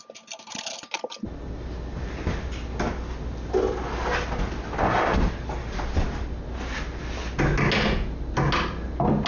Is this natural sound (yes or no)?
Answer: yes